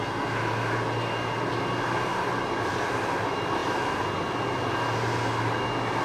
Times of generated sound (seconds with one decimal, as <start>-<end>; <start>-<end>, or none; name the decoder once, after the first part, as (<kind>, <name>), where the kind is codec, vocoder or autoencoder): none